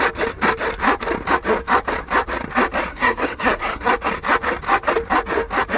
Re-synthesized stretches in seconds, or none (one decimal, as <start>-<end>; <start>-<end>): 2.9-3.9